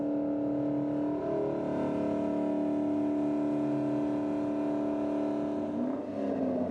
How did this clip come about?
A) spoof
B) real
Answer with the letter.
B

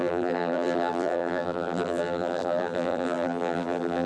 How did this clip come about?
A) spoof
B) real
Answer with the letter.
A